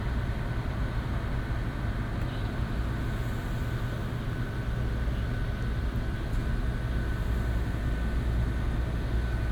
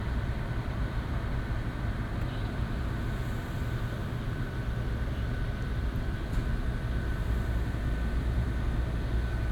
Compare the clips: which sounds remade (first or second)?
second